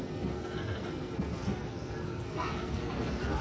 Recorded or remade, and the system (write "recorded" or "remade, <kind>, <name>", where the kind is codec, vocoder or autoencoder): remade, codec, SNAC